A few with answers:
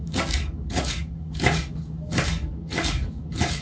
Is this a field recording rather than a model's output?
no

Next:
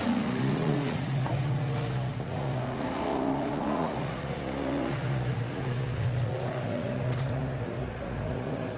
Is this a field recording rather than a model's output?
no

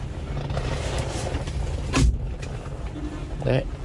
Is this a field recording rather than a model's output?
yes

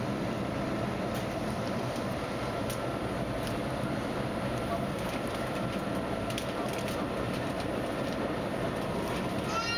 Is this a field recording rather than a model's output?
no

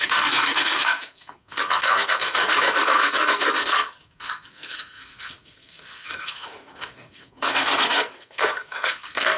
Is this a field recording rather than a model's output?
no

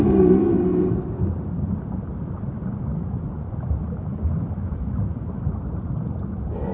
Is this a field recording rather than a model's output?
yes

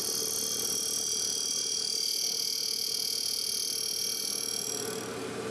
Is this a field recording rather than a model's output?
yes